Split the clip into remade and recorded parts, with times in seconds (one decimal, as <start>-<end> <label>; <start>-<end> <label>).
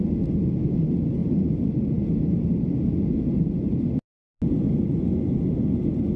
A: 0.0-6.2 recorded